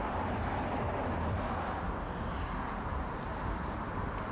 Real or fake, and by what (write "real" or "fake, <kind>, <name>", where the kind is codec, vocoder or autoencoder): real